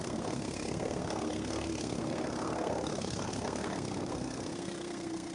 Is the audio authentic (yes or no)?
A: no